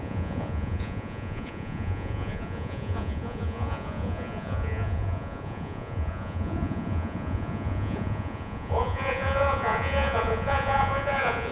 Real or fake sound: fake